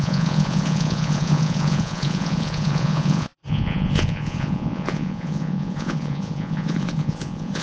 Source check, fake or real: fake